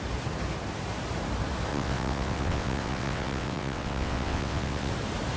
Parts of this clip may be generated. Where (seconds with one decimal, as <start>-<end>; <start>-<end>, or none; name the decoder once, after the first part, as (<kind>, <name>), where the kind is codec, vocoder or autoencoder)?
1.7-4.9 (vocoder, WaveNeXt)